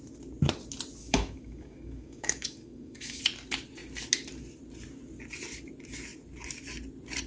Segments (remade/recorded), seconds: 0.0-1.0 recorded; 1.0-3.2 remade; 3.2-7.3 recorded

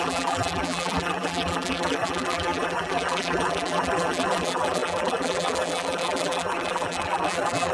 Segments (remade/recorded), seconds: 0.0-7.7 remade